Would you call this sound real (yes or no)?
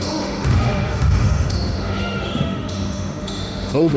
no